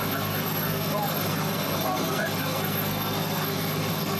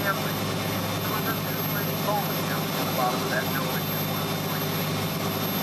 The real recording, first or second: second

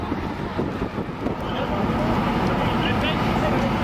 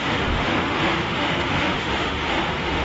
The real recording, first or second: first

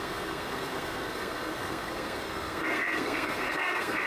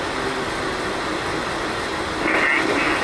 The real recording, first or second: second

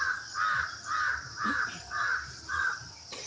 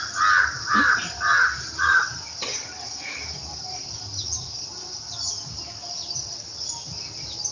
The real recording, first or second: second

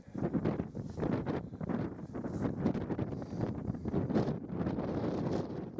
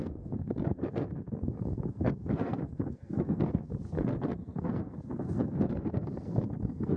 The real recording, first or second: first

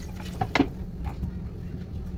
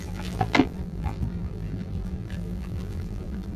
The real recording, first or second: first